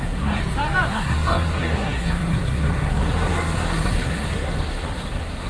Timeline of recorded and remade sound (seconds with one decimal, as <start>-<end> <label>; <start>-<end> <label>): 0.0-0.4 remade; 0.4-0.9 recorded; 0.9-5.5 remade

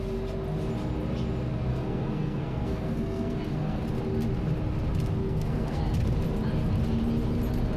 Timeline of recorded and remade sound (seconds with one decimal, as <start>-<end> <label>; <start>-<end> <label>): 0.0-1.7 recorded; 1.7-3.8 remade; 3.8-5.2 recorded; 5.2-5.8 remade; 5.8-7.8 recorded